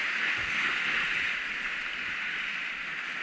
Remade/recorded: recorded